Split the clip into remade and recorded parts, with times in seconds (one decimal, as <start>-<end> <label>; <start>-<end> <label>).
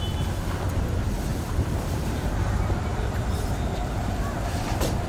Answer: 0.0-1.3 recorded; 1.3-2.2 remade; 2.2-2.9 recorded; 2.9-4.4 remade; 4.4-5.1 recorded